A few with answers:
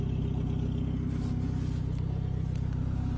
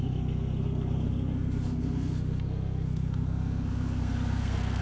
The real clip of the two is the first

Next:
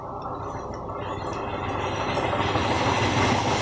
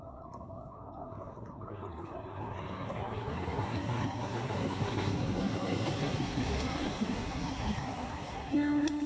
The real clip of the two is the first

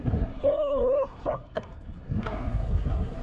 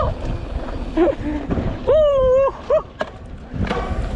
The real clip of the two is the second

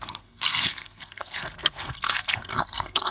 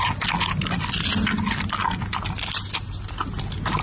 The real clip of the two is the second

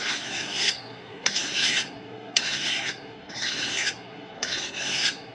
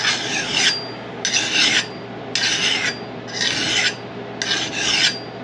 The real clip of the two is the second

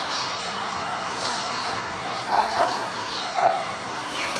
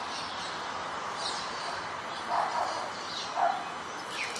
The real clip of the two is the second